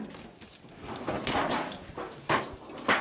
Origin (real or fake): real